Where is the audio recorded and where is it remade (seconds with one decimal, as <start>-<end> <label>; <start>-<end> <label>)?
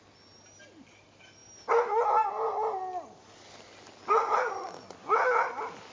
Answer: 0.0-5.9 recorded